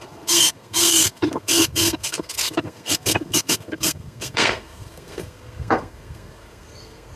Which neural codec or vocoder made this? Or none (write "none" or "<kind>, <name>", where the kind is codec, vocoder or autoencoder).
codec, SNAC